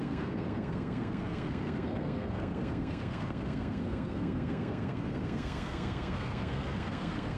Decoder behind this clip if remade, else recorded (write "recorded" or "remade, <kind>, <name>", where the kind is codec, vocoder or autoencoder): remade, codec, SNAC